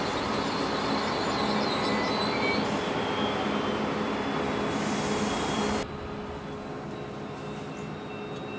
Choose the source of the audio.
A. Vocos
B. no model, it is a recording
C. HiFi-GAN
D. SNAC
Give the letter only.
B